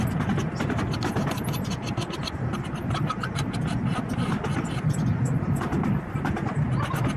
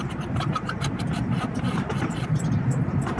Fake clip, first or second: second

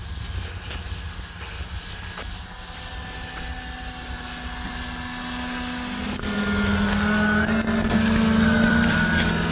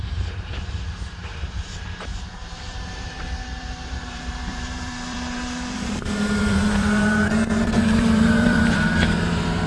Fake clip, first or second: second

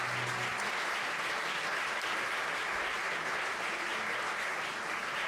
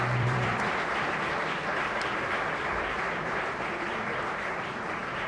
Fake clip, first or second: second